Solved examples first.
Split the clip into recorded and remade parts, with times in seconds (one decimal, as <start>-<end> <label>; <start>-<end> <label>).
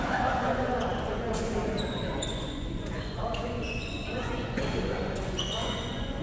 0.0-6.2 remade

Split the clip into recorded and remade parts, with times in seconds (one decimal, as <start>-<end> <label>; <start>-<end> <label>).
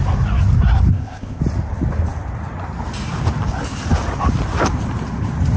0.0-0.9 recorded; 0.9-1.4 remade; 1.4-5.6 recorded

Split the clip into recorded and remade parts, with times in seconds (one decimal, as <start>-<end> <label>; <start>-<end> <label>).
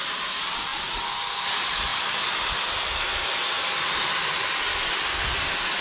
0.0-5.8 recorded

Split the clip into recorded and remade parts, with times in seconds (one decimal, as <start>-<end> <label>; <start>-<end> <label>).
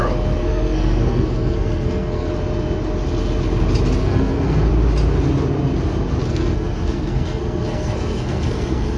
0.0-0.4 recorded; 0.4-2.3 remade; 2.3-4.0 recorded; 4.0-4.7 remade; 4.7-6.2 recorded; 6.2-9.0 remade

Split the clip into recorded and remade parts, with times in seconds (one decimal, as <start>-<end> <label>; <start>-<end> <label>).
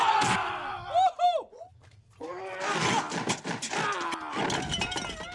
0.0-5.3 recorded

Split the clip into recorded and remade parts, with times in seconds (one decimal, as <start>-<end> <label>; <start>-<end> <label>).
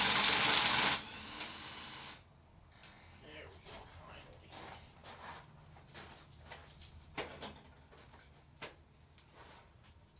0.0-10.2 recorded